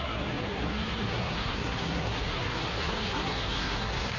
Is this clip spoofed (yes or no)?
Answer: yes